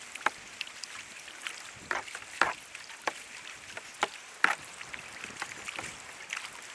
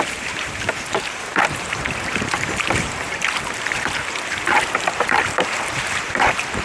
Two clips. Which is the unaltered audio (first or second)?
first